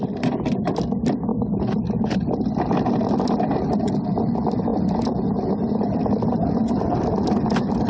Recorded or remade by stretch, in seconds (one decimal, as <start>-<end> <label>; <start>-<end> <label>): 0.0-7.9 recorded